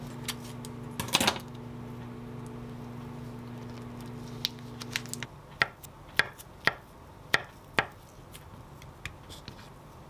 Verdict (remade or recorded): recorded